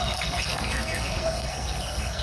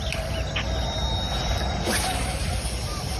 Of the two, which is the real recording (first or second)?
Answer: second